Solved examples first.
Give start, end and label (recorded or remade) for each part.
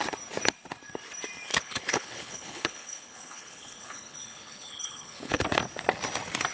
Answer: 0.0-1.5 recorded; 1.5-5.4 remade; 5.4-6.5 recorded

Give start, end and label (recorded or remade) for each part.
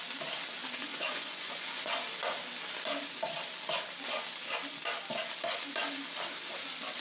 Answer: 0.0-0.9 recorded; 0.9-1.9 remade; 1.9-7.0 recorded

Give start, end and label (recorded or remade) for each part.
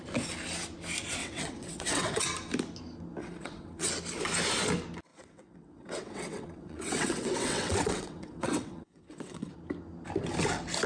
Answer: 0.0-1.2 recorded; 1.2-2.2 remade; 2.2-3.2 recorded; 3.2-3.9 remade; 3.9-5.1 recorded; 5.1-9.5 remade; 9.5-10.9 recorded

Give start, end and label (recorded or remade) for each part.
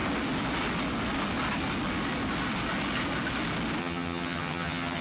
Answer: 0.0-3.8 recorded; 3.8-5.0 remade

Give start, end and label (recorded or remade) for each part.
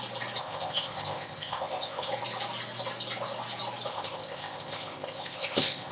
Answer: 0.0-0.4 recorded; 0.4-2.1 remade; 2.1-3.9 recorded; 3.9-5.9 remade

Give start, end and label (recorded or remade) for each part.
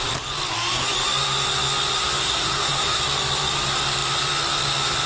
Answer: 0.0-2.2 recorded; 2.2-3.0 remade; 3.0-5.1 recorded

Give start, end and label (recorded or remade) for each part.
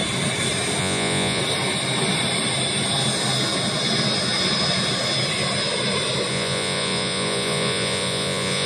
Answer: 0.0-0.8 recorded; 0.8-1.4 remade; 1.4-6.3 recorded; 6.3-8.7 remade